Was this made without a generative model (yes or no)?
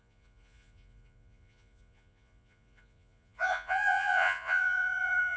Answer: no